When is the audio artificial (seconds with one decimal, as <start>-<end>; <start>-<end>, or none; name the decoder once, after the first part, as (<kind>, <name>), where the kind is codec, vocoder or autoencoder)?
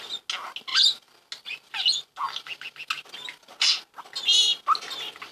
none